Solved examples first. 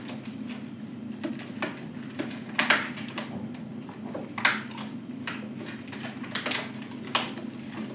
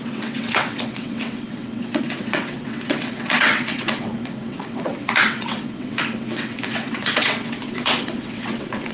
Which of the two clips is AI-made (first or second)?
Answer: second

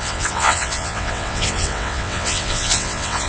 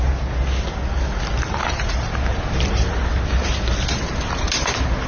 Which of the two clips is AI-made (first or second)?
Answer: first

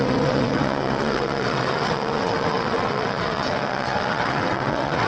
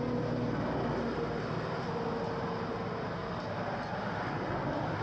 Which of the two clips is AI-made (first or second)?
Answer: first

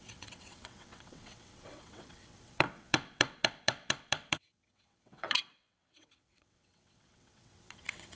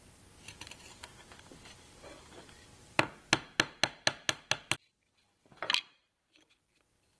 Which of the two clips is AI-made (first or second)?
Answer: first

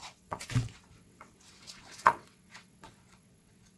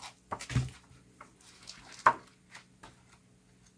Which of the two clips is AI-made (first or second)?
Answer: first